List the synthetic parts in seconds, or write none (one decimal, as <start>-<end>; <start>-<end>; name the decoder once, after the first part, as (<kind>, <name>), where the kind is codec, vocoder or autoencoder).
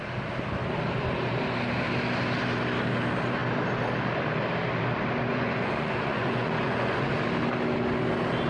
5.3-7.1 (vocoder, Vocos)